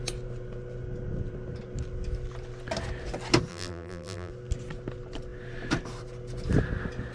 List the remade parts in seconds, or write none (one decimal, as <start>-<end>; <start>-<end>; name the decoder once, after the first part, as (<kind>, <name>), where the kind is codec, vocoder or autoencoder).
3.5-4.3 (vocoder, BigVGAN v2)